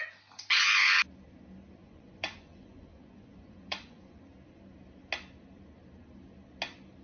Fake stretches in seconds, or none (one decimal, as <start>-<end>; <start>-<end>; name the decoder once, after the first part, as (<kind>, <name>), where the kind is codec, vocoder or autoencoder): 1.8-4.2 (vocoder, Vocos)